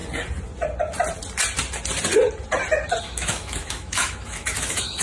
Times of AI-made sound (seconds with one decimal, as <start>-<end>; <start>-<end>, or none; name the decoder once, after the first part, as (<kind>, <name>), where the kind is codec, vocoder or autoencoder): 3.0-5.0 (autoencoder, DAC-VAE)